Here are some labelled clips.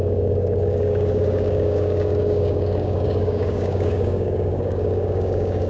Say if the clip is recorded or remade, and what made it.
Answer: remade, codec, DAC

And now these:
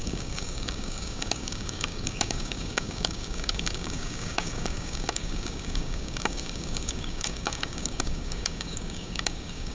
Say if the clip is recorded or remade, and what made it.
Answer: remade, codec, DAC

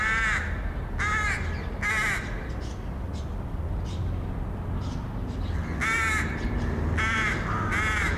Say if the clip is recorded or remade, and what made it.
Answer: recorded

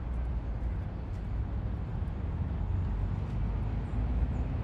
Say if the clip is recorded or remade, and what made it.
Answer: recorded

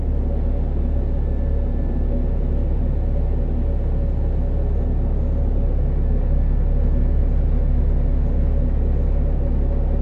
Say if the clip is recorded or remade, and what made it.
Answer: recorded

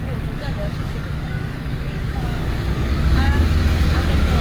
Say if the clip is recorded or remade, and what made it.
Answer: remade, codec, DAC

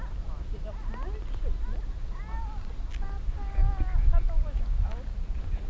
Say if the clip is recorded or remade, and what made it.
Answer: recorded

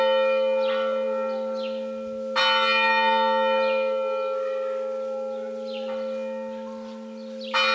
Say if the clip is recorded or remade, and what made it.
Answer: recorded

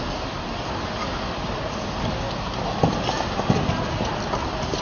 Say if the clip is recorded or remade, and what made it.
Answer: recorded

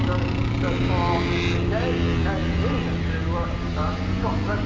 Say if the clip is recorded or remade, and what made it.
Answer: recorded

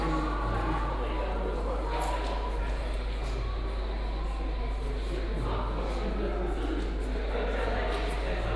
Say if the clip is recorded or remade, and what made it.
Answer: recorded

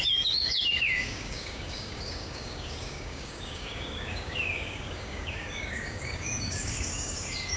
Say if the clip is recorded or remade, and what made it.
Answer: remade, codec, DAC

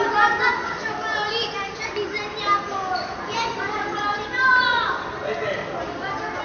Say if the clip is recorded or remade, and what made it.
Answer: recorded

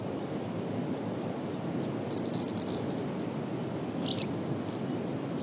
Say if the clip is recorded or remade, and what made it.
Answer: recorded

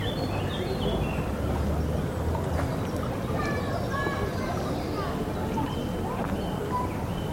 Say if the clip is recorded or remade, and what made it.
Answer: recorded